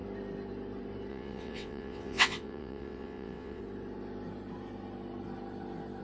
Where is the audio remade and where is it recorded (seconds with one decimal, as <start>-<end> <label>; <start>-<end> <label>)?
0.0-1.1 recorded; 1.1-3.6 remade; 3.6-6.0 recorded